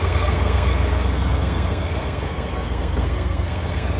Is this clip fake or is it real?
fake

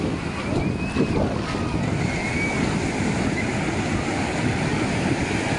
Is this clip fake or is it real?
real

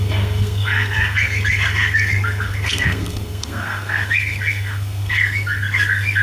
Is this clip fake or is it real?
fake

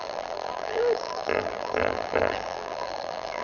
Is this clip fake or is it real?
fake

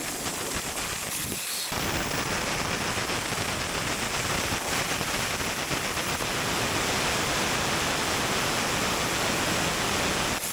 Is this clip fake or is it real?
real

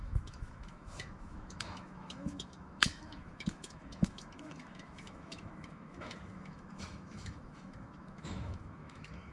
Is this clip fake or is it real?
fake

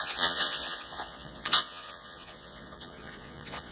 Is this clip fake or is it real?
fake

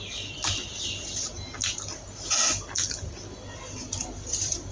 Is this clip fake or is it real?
real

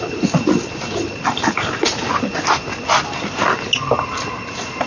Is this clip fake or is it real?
real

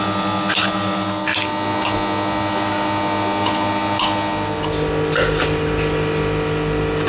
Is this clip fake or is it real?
real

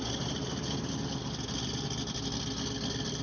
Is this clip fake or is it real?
real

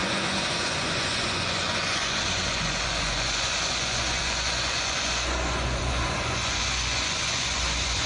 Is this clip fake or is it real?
fake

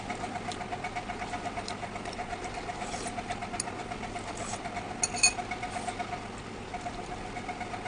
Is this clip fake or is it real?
real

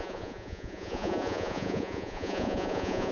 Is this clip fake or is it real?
fake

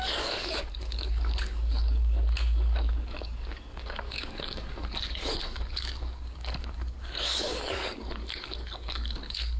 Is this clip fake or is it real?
fake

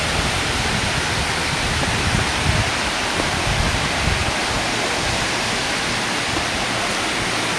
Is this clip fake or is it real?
real